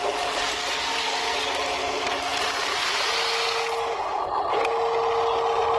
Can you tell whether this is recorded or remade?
recorded